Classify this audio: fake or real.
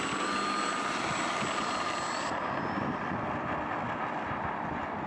real